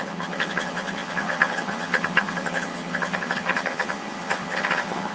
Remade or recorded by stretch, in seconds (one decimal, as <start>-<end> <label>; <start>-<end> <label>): 0.0-5.1 remade